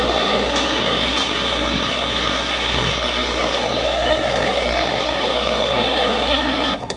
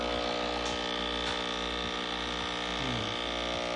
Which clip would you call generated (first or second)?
first